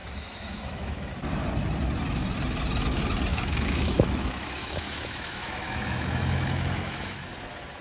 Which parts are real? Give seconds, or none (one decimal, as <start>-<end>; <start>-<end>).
1.1-3.3; 7.3-7.8